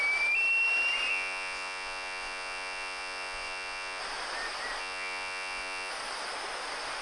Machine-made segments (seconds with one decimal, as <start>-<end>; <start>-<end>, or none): 1.1-4.0; 4.8-5.9